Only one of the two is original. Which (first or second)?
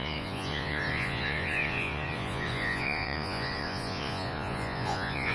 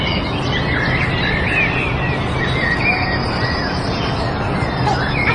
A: second